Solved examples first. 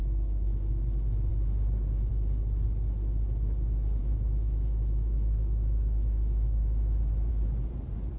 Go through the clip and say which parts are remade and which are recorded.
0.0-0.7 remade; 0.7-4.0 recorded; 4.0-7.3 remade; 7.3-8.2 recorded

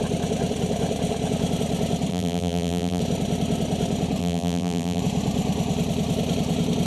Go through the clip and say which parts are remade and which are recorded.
0.0-2.1 recorded; 2.1-3.0 remade; 3.0-4.2 recorded; 4.2-5.0 remade; 5.0-6.9 recorded